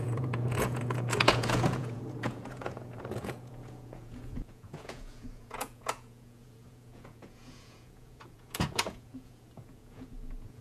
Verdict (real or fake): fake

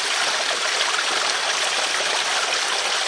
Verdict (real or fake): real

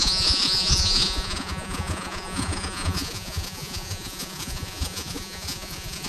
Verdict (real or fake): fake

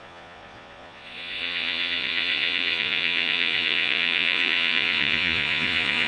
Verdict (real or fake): fake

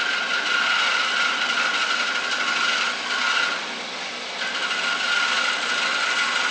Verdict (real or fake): real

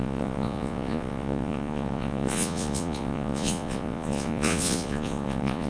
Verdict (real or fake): fake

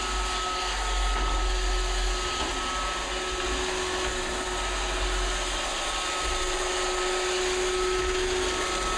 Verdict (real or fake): real